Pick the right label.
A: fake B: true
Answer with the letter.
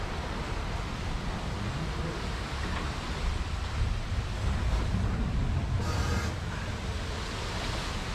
B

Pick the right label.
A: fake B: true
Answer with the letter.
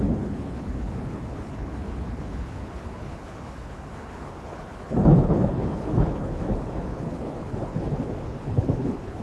A